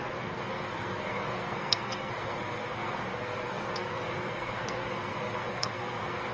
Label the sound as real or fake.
fake